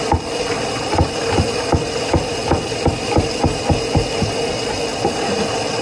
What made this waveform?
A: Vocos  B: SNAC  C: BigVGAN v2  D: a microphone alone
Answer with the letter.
D